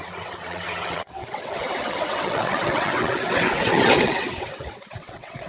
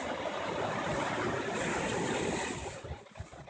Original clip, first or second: second